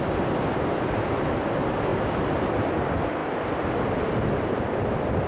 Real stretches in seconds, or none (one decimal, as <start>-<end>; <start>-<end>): 0.0-5.3